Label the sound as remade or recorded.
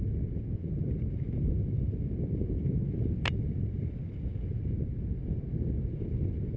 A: recorded